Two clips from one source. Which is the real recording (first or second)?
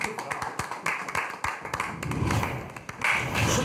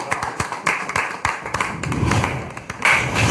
first